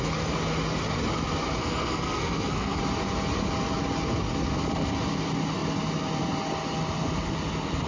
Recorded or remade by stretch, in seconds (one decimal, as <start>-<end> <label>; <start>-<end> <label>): 0.0-1.6 recorded; 1.6-2.8 remade; 2.8-7.9 recorded

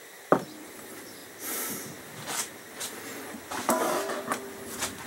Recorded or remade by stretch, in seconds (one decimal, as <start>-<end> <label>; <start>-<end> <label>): 0.0-5.1 recorded

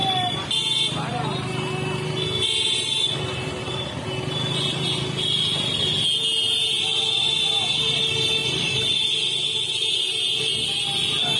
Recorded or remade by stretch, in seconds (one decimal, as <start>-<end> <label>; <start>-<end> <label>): 0.0-11.4 recorded

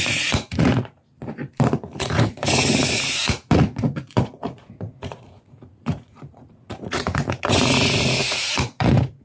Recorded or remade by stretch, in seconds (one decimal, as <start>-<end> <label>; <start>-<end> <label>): 0.0-1.0 remade; 1.0-2.0 recorded; 2.0-9.2 remade

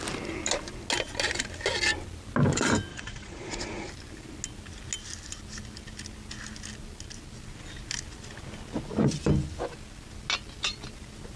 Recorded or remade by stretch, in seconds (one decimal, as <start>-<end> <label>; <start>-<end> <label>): 0.0-2.9 recorded; 2.9-3.9 remade; 3.9-11.4 recorded